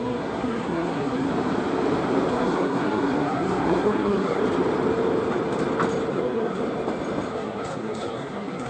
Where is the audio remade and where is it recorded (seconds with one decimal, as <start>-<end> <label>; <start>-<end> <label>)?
0.0-1.3 remade; 1.3-2.3 recorded; 2.3-4.4 remade; 4.4-6.1 recorded; 6.1-6.6 remade; 6.6-7.3 recorded; 7.3-8.7 remade